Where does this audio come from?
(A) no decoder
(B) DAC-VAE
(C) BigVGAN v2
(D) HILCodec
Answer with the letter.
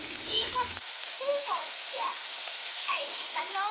B